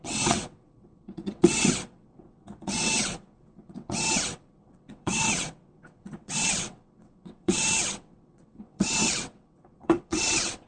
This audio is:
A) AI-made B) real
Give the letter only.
A